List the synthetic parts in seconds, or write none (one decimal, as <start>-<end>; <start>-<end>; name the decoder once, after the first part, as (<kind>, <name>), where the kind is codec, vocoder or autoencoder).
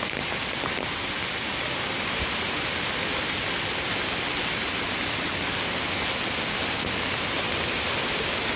none